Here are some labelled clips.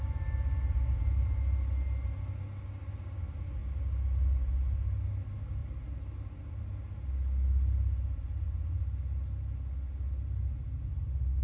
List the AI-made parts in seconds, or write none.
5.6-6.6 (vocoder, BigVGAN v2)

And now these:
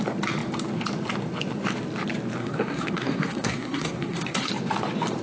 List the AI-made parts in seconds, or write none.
2.4-4.5 (codec, SNAC)